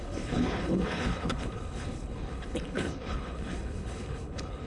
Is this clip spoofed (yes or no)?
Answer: yes